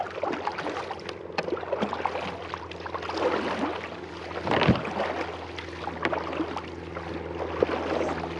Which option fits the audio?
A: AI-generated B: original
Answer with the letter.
B